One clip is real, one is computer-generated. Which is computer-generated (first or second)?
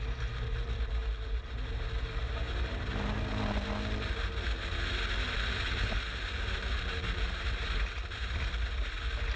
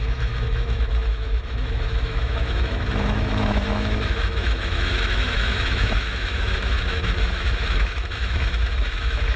second